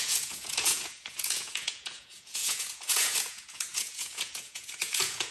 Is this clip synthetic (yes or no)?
yes